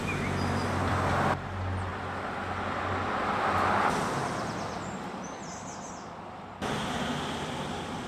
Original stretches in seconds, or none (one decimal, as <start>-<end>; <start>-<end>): 0.0-8.1